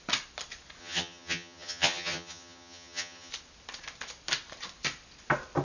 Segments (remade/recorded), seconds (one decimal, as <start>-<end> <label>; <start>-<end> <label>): 0.0-0.8 recorded; 0.8-3.3 remade; 3.3-5.6 recorded